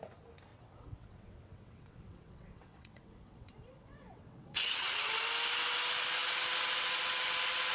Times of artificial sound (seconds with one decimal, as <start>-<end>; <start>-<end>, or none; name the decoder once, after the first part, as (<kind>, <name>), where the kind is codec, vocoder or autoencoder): 0.5-5.1 (vocoder, WaveNeXt)